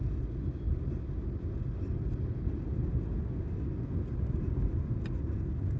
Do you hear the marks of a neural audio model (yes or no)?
no